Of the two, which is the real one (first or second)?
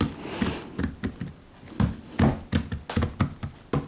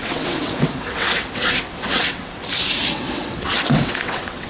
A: first